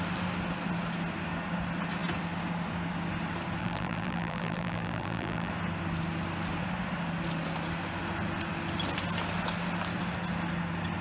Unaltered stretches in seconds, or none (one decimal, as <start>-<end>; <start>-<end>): 0.0-3.6; 5.5-11.0